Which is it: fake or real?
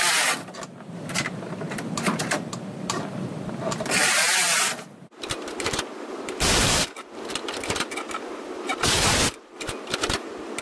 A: fake